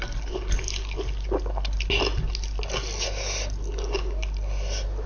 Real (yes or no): yes